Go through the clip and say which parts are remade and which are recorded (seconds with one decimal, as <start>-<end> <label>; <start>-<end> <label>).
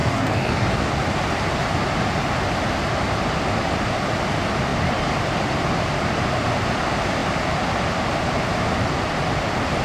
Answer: 0.0-0.9 remade; 0.9-9.8 recorded